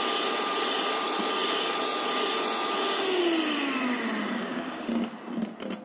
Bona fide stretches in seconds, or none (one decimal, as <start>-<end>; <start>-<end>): 0.0-4.4; 5.1-5.8